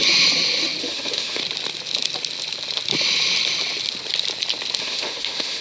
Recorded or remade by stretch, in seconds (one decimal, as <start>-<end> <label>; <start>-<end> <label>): 0.0-0.8 recorded; 0.8-1.4 remade; 1.4-4.8 recorded; 4.8-5.6 remade